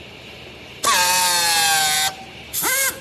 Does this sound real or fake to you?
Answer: real